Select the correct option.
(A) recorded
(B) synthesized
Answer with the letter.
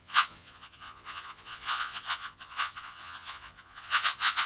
B